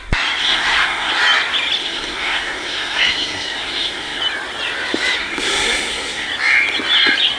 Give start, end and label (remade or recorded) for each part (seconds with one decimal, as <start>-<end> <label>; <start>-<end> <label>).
0.0-0.4 recorded; 0.4-1.1 remade; 1.1-1.8 recorded; 1.8-4.2 remade; 4.2-5.2 recorded; 5.2-6.3 remade; 6.3-7.4 recorded